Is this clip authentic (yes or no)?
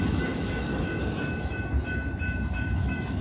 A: no